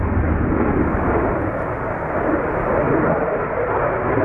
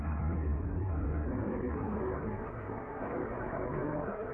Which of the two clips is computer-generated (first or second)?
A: second